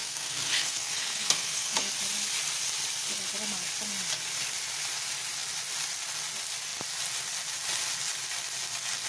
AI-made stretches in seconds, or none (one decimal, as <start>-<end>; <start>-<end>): 0.0-1.9